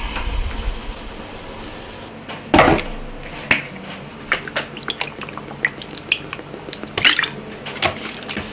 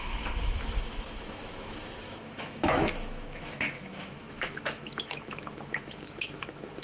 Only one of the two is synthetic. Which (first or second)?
second